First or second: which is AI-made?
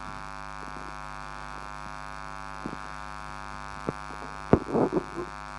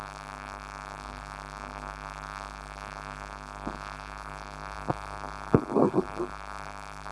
second